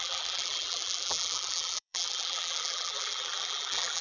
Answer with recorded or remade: remade